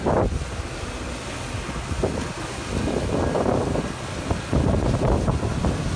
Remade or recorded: recorded